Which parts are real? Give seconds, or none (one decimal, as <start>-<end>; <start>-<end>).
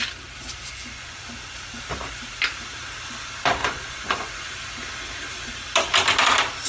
0.0-0.7; 1.2-3.6; 4.5-6.7